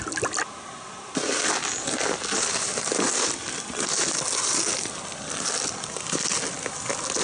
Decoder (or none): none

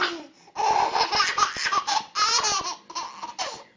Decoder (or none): none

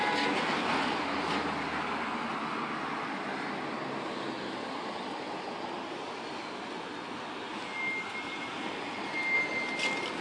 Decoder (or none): none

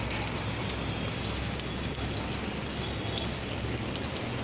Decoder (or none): none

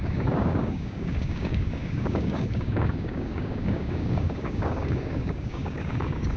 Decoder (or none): codec, DAC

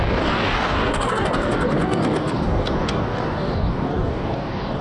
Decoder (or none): codec, DAC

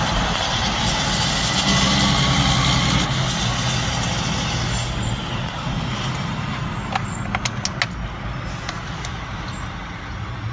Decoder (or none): none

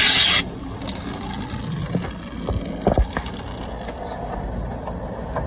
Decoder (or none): none